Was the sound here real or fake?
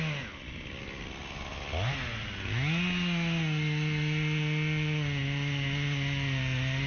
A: real